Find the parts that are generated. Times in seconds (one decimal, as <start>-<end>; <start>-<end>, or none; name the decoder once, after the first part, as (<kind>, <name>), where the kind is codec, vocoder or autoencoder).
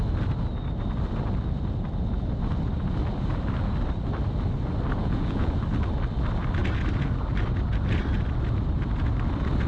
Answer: 5.0-5.5 (vocoder, Vocos)